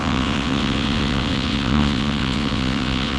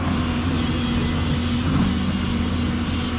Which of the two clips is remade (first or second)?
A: first